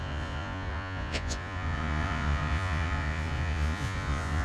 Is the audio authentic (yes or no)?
no